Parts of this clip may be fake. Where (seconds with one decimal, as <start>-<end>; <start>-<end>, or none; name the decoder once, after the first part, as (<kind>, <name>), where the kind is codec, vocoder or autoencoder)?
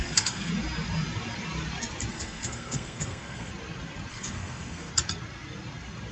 0.0-0.5 (codec, SNAC); 2.1-3.5; 4.1-4.9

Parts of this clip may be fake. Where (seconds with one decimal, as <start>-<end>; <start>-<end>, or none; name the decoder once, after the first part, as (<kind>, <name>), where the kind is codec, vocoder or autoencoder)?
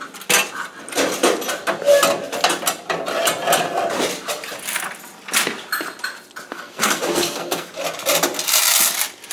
6.5-7.7 (codec, SNAC)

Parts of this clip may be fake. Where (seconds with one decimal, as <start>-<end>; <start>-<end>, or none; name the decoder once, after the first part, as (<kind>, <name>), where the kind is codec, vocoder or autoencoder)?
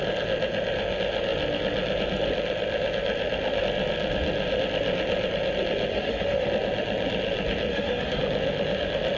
5.9-6.5 (autoencoder, DAC-VAE); 7.7-8.2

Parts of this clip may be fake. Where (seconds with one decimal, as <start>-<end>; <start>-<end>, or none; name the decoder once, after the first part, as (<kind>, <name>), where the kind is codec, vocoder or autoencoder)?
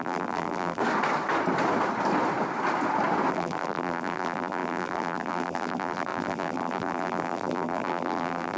0.0-0.8 (vocoder, BigVGAN v2); 3.3-8.6